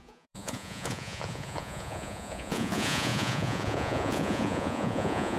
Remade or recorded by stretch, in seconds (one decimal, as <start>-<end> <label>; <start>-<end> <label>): 0.0-5.4 remade